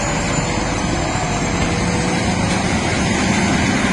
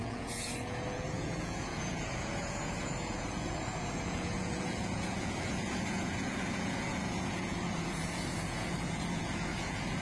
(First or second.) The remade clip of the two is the second